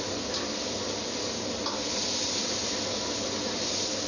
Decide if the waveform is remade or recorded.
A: recorded